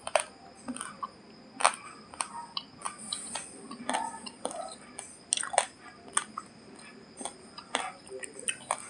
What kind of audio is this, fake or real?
real